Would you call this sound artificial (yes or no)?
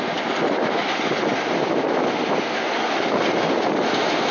no